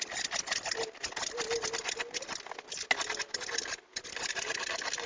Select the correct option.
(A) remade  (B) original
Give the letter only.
B